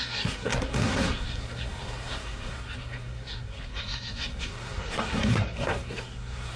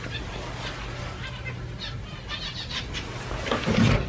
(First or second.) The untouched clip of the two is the second